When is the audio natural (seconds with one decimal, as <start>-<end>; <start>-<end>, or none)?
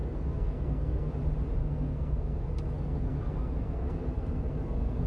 1.1-1.6